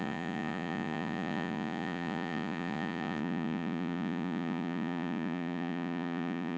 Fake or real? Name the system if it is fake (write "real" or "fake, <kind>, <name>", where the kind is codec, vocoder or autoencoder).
fake, vocoder, Vocos